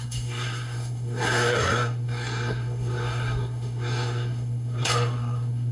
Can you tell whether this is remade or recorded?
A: remade